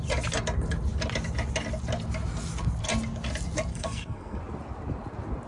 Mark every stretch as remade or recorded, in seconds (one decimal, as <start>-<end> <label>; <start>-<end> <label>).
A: 0.0-3.7 recorded; 3.7-4.4 remade; 4.4-5.5 recorded